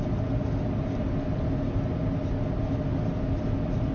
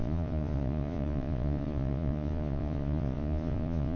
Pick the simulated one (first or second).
second